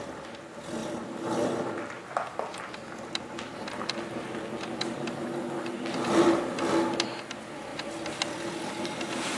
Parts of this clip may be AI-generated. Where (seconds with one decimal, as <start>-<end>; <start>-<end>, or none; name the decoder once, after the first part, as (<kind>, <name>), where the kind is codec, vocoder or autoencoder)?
none